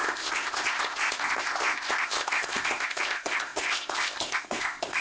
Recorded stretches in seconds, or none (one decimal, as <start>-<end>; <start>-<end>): none